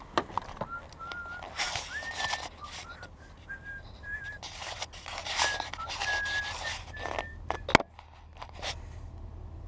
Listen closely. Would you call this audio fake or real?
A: real